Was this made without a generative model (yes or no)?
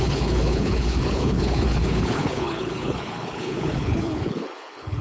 no